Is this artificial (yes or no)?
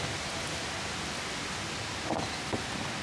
no